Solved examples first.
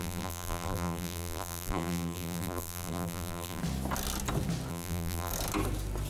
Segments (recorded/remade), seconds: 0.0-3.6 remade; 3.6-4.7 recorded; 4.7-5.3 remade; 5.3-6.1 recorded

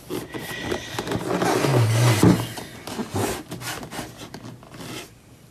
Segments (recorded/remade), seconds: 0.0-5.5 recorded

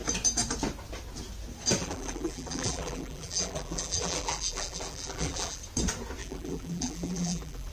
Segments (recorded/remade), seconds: 0.0-1.8 recorded; 1.8-5.6 remade; 5.6-6.2 recorded; 6.2-7.7 remade

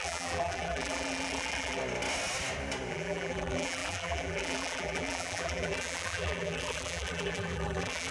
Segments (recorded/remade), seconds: 0.0-1.8 remade; 1.8-2.9 recorded; 2.9-8.1 remade

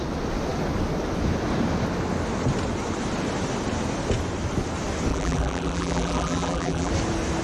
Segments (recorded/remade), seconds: 0.0-5.1 recorded; 5.1-6.9 remade; 6.9-7.4 recorded

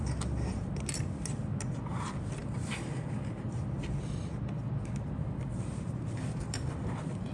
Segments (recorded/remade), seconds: 0.0-1.5 remade; 1.5-2.0 recorded; 2.0-7.3 remade

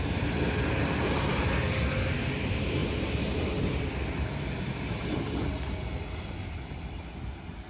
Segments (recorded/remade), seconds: 0.0-7.7 recorded

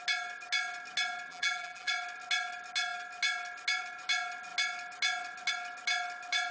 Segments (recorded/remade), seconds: 0.0-1.3 recorded; 1.3-1.9 remade; 1.9-6.5 recorded